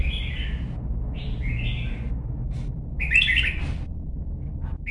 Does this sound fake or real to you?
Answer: real